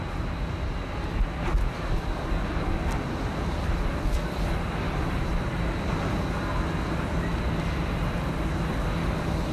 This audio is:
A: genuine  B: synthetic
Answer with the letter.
A